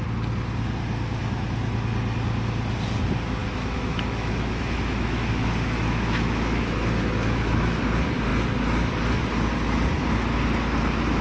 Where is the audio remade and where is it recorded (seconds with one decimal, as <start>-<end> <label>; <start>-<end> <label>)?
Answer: 0.0-3.4 recorded; 3.4-7.8 remade; 7.8-11.2 recorded